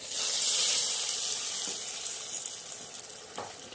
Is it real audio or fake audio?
real